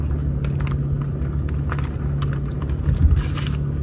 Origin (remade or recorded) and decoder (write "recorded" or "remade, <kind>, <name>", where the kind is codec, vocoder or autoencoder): recorded